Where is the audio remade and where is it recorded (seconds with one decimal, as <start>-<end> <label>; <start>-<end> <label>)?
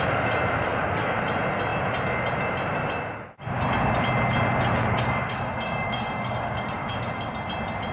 0.0-0.7 recorded; 0.7-1.2 remade; 1.2-4.8 recorded; 4.8-7.3 remade; 7.3-7.9 recorded